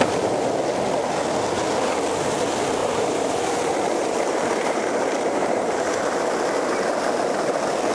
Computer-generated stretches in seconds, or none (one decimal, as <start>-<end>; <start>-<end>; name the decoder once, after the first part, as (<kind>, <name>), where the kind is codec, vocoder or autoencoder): 2.8-6.3 (vocoder, BigVGAN v2)